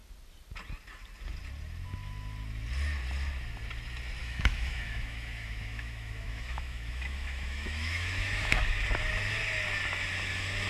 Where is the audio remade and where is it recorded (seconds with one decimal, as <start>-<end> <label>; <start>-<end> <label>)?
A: 0.0-4.2 recorded; 4.2-8.7 remade; 8.7-10.7 recorded